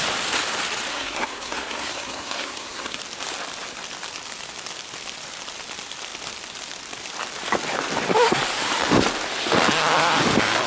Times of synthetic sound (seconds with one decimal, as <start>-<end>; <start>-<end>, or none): 0.9-3.0